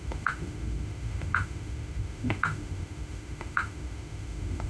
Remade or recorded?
remade